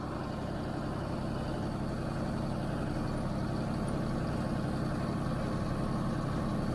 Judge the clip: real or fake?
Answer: real